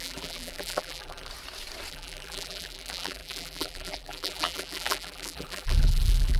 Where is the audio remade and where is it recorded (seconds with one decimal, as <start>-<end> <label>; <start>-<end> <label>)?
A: 0.0-1.3 remade; 1.3-1.9 recorded; 1.9-6.4 remade